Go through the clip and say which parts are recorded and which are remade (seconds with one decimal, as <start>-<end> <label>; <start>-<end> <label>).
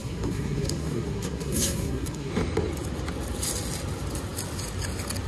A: 0.0-2.3 remade; 2.3-5.3 recorded